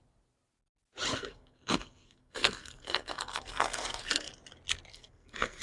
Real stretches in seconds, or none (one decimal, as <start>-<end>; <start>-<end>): 0.0-1.1; 4.3-4.9